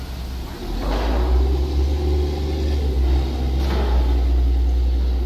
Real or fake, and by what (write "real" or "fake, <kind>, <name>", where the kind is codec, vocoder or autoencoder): real